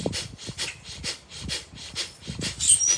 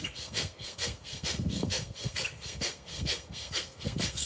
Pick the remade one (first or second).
second